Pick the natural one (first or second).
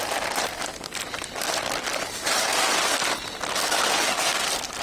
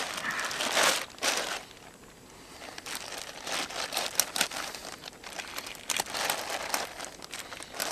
second